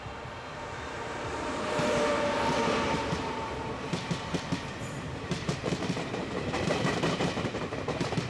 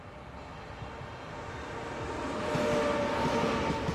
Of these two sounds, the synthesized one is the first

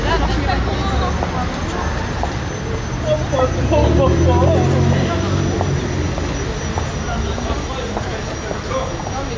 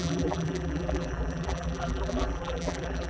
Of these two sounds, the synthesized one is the second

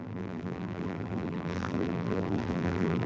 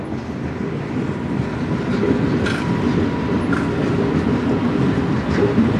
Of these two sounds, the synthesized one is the first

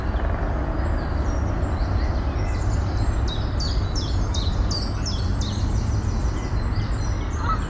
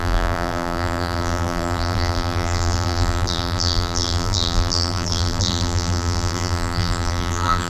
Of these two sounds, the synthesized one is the second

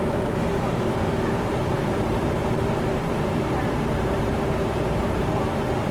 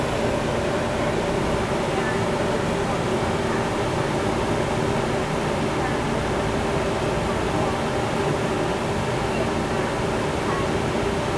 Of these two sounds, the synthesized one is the first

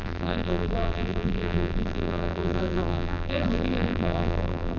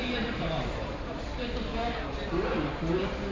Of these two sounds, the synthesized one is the first